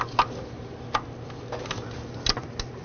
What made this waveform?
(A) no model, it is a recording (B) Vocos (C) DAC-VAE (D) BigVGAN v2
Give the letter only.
A